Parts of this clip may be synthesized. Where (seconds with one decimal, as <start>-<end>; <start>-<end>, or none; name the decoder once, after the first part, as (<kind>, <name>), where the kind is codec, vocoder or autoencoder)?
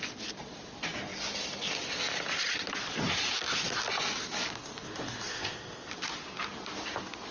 5.3-5.9 (codec, ZipCodec)